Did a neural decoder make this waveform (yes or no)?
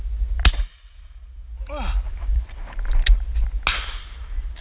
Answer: no